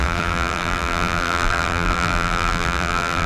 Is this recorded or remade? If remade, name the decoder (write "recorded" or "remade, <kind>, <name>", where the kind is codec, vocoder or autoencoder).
remade, vocoder, BigVGAN v2